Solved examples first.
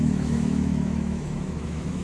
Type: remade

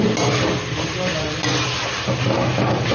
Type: recorded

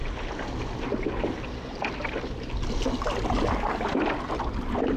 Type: recorded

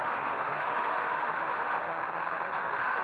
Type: remade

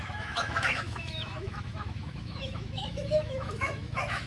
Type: remade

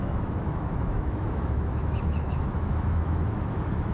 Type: remade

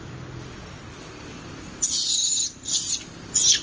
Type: recorded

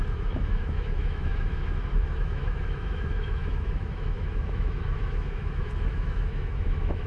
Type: remade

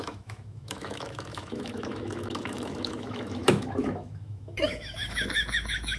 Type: remade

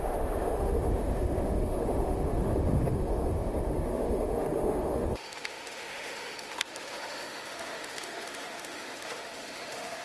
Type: remade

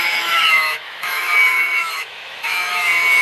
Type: remade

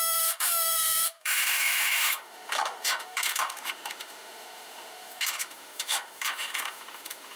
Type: remade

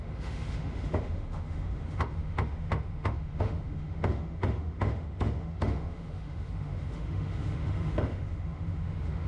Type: remade